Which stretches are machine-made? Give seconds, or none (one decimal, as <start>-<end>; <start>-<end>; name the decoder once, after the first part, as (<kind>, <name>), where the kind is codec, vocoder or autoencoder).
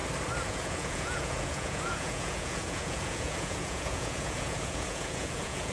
0.5-5.7 (vocoder, Vocos)